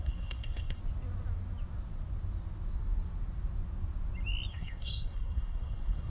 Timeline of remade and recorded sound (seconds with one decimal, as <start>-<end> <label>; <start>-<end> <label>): 0.0-0.8 remade; 0.8-4.5 recorded; 4.5-6.1 remade